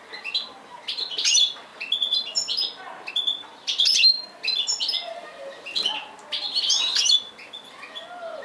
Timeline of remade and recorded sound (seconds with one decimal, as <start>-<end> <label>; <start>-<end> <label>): 0.0-8.4 recorded